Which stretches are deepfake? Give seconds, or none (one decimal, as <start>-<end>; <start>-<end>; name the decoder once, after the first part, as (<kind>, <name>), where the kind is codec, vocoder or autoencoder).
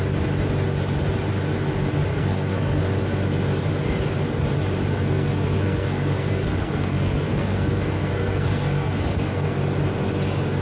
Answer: 2.1-2.8 (codec, SNAC); 4.9-9.6